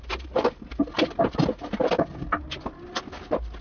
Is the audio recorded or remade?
recorded